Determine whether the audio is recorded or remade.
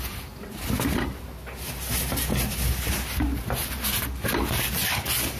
recorded